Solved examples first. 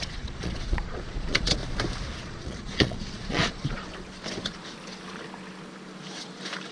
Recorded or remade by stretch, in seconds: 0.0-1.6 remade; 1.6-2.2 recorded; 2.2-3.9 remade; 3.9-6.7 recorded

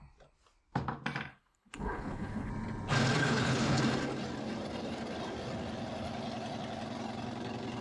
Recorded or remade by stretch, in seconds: 0.0-1.3 recorded; 1.3-2.5 remade; 2.5-3.2 recorded; 3.2-3.8 remade; 3.8-7.8 recorded

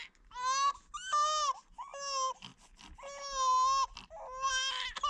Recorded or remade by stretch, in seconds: 0.0-5.1 recorded